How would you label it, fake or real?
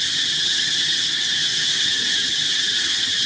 fake